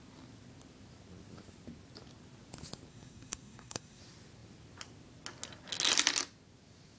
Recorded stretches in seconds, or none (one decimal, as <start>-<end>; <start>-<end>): 0.0-2.9; 4.0-7.0